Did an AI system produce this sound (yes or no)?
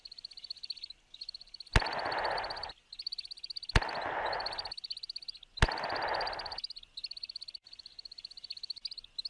no